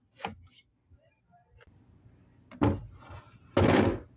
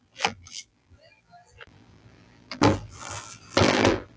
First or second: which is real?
first